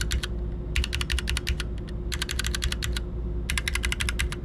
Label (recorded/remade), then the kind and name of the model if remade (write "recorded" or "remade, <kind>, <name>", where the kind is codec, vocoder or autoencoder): recorded